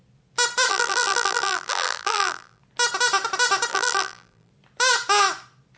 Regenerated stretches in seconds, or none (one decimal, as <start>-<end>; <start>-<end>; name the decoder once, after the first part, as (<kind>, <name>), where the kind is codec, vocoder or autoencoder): 0.7-2.6 (vocoder, BigVGAN v2); 3.7-4.5